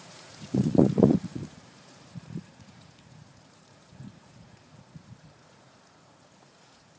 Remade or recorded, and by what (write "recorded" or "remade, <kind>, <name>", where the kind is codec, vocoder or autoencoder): remade, vocoder, Vocos